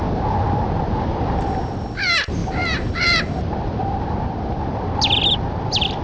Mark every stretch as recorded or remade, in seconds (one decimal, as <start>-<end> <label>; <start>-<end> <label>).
0.0-1.1 recorded; 1.1-6.0 remade